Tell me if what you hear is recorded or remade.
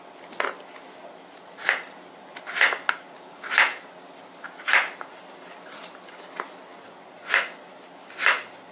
recorded